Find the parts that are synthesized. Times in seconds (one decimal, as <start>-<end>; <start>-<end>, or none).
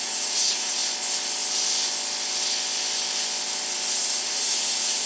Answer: 0.0-0.8; 3.9-5.1